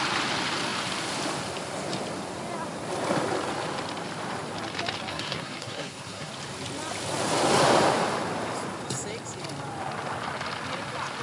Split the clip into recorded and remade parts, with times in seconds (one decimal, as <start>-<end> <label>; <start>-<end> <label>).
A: 0.0-5.1 recorded; 5.1-6.3 remade; 6.3-11.2 recorded